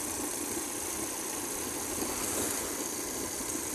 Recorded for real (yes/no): yes